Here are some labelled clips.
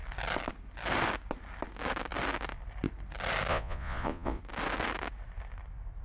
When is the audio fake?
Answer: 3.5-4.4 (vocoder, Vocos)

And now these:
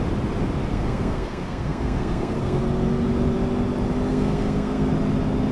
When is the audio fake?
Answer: 0.7-2.6 (codec, SNAC); 4.1-4.9

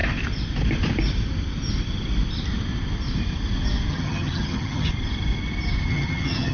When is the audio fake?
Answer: 3.9-4.9 (vocoder, HiFi-GAN); 5.9-6.5